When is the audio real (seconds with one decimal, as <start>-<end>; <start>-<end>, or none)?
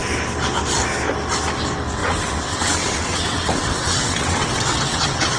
0.0-2.0